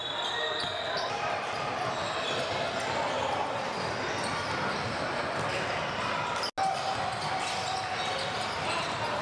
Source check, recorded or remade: recorded